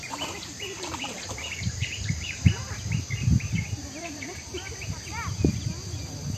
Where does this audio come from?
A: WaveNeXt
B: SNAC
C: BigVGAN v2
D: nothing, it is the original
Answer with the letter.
C